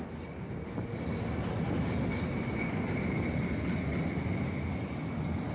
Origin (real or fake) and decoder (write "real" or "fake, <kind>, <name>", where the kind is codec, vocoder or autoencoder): real